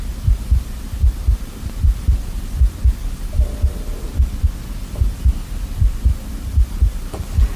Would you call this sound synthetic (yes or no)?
no